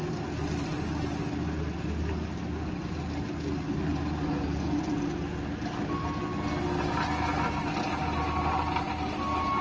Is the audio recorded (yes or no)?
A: yes